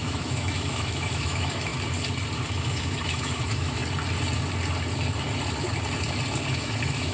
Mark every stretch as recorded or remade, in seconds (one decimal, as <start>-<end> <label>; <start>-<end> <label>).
0.0-1.7 remade; 1.7-2.5 recorded; 2.5-3.8 remade; 3.8-6.5 recorded; 6.5-7.1 remade